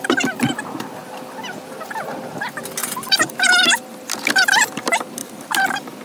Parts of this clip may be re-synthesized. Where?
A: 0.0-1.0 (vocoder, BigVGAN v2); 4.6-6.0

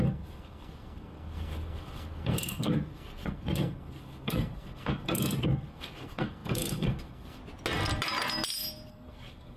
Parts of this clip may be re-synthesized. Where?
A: 0.0-7.4 (codec, SNAC); 8.9-9.6

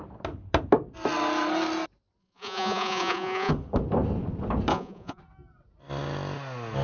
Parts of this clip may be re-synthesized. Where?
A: 2.2-3.5 (vocoder, Vocos); 4.7-5.2

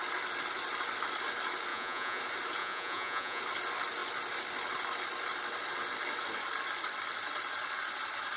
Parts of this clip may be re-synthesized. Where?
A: 1.7-2.2 (vocoder, Vocos); 2.6-3.4

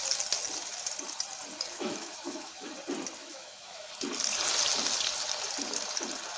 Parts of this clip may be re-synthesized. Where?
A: 1.7-2.7 (autoencoder, DAC-VAE); 3.2-3.9

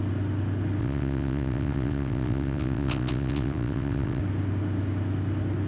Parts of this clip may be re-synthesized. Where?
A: 0.8-4.2 (vocoder, WaveNeXt)

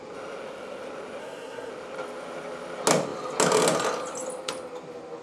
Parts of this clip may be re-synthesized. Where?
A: 1.2-1.7 (codec, SNAC)

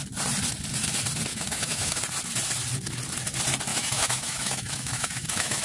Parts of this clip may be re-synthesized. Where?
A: 1.3-2.0 (autoencoder, DAC-VAE); 3.7-5.6